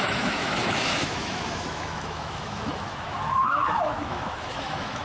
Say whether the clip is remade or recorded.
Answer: remade